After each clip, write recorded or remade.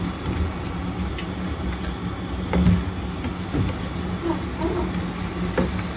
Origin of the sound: recorded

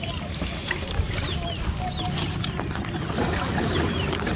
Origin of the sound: recorded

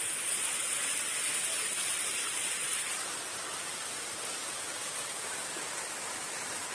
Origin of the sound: recorded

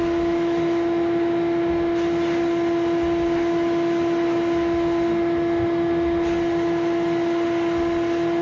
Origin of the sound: recorded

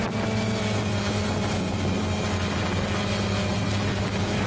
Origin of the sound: recorded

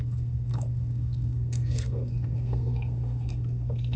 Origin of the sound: remade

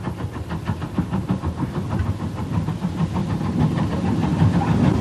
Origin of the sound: recorded